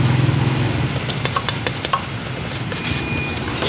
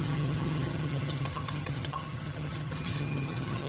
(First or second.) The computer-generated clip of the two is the second